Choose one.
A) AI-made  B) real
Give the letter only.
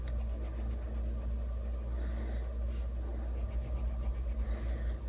B